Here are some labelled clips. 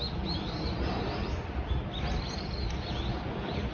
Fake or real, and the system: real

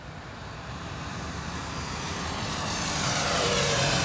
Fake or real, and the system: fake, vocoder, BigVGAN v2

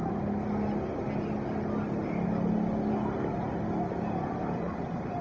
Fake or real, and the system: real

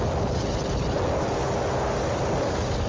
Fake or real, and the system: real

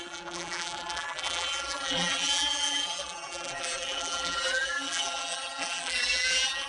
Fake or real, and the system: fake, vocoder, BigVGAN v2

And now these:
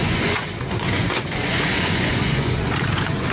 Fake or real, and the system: fake, vocoder, Vocos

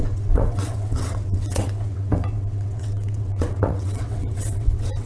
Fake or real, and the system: fake, vocoder, WaveNeXt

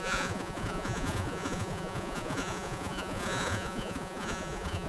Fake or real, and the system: fake, vocoder, Vocos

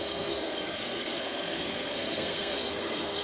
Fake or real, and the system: fake, codec, SNAC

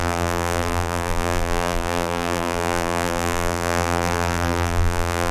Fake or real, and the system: fake, vocoder, BigVGAN v2